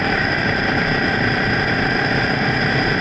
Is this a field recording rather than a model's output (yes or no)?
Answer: no